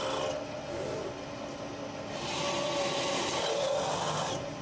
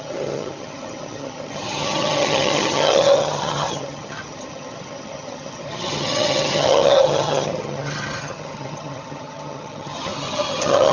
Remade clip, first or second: second